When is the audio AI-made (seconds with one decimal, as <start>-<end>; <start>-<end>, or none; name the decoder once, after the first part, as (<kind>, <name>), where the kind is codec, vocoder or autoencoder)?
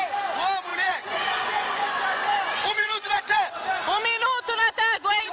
0.7-3.5 (vocoder, Vocos)